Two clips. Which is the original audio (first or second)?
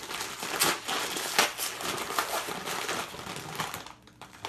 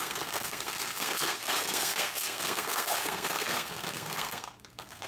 first